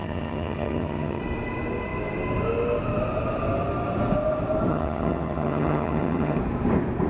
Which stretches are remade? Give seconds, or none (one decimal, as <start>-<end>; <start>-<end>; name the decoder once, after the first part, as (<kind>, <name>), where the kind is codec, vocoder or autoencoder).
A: 0.0-1.2 (vocoder, HiFi-GAN); 4.7-6.4